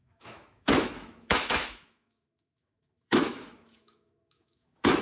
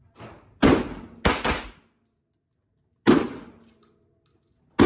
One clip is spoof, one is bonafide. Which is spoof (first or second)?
first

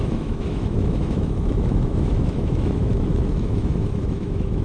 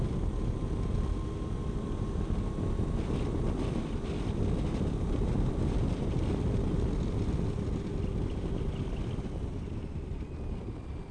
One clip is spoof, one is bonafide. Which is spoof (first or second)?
first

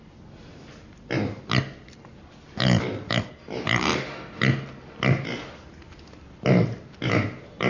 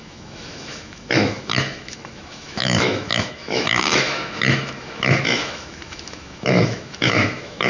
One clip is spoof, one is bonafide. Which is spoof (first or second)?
second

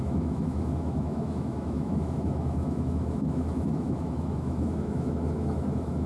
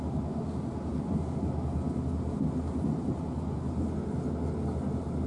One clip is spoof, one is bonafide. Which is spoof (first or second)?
first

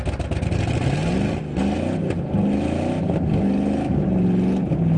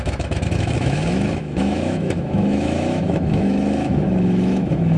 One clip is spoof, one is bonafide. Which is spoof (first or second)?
second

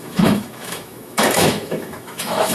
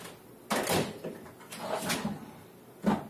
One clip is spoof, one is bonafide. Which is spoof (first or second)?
first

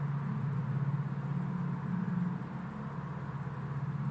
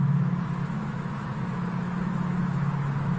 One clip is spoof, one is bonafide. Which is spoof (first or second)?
second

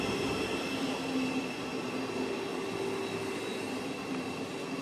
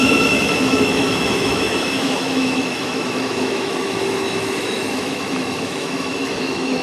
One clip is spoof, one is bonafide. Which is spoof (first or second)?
second